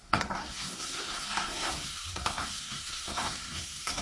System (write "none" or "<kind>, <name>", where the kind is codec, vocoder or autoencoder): codec, SNAC